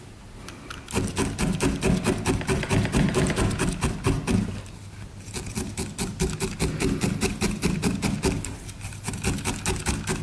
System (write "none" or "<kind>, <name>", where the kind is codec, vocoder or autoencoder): none